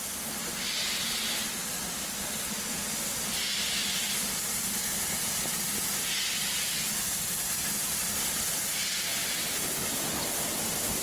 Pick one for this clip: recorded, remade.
recorded